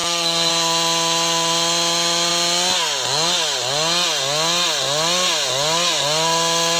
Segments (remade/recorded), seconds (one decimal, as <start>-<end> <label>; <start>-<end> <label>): 0.0-0.5 remade; 0.5-6.8 recorded